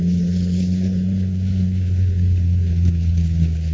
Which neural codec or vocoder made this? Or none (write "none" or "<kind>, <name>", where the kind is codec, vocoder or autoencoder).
codec, HILCodec